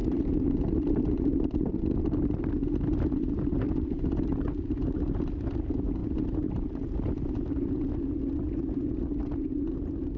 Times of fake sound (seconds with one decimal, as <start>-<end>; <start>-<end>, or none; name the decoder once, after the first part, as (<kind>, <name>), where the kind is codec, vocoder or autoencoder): 0.0-1.7 (vocoder, BigVGAN v2)